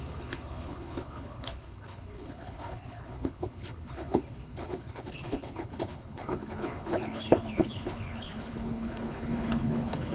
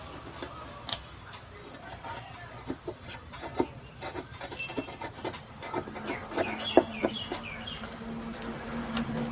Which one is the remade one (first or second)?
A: first